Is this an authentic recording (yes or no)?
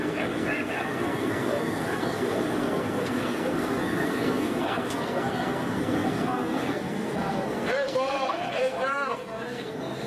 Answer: no